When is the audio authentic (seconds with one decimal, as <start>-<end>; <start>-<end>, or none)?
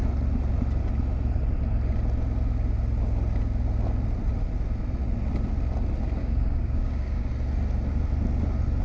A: 0.0-6.2; 7.3-8.8